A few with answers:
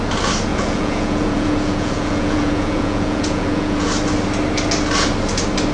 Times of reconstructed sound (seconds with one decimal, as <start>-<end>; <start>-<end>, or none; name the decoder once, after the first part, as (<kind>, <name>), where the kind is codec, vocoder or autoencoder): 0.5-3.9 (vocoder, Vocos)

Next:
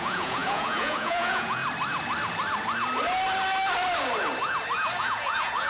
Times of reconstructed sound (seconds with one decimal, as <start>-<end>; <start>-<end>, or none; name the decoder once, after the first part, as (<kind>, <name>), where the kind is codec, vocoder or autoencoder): 0.0-1.6 (vocoder, Vocos); 5.0-5.7

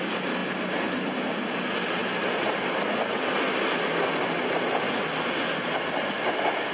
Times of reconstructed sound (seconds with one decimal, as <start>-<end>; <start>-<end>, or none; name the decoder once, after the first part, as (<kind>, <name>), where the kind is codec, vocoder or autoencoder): none

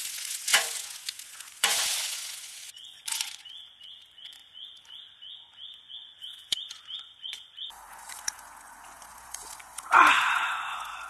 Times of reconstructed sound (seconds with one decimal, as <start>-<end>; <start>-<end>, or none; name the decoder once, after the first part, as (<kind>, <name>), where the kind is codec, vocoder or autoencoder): 0.0-11.1 (vocoder, Vocos)

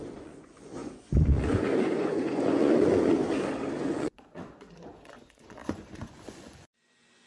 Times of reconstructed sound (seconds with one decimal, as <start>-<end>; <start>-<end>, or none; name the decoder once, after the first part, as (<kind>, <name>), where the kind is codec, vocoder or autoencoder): 0.0-3.2 (vocoder, Vocos); 3.7-7.3

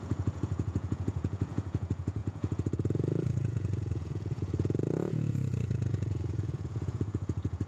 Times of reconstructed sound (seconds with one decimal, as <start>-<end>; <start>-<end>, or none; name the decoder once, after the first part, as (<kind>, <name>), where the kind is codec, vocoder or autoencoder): 0.0-7.7 (vocoder, Vocos)